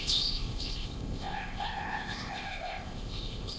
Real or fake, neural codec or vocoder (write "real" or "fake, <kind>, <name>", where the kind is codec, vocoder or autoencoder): fake, codec, ZipCodec